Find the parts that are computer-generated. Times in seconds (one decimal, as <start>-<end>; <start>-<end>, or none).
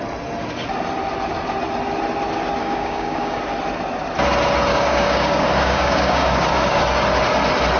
2.6-3.4; 4.7-6.8